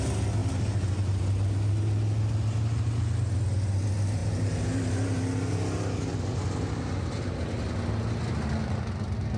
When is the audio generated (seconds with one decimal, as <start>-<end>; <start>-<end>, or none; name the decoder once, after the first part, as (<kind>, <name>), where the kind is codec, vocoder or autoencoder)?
none